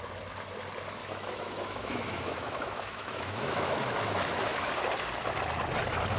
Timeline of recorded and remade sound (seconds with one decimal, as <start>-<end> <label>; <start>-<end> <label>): 0.0-1.0 recorded; 1.0-4.7 remade; 4.7-6.2 recorded